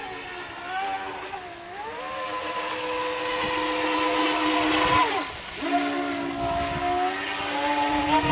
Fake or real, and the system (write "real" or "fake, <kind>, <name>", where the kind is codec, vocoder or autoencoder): real